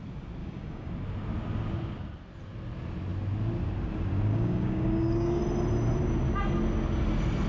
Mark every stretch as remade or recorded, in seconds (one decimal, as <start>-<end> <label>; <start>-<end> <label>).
0.0-0.4 recorded; 0.4-0.9 remade; 0.9-4.3 recorded; 4.3-5.4 remade; 5.4-7.5 recorded